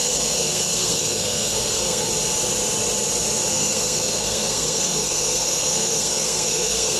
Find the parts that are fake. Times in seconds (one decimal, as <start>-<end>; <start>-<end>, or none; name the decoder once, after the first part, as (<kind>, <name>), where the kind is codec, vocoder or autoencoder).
0.0-2.1 (codec, SNAC); 3.5-7.0